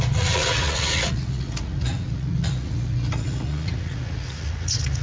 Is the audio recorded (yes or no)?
no